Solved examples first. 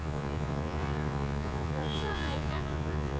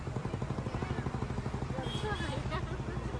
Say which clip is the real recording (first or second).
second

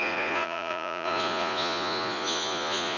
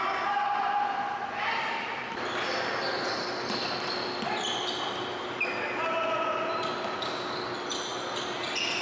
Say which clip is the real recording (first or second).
second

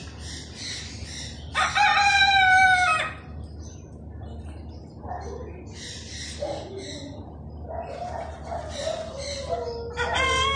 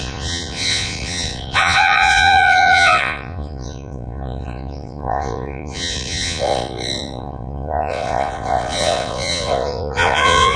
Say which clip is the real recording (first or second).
first